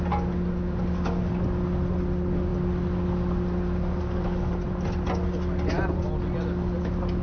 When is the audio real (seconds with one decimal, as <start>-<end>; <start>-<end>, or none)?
0.0-7.2